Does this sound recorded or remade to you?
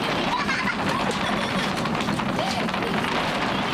recorded